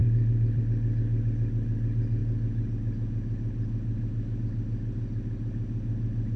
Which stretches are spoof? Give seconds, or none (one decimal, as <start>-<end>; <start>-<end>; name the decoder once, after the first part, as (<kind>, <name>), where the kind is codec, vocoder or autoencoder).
0.0-0.6 (vocoder, BigVGAN v2)